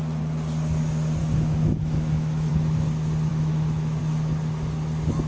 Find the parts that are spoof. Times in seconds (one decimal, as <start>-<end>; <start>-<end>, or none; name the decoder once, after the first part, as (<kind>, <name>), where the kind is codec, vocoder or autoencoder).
1.2-2.5 (autoencoder, DAC-VAE); 3.3-4.0